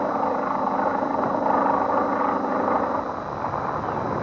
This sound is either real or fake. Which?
real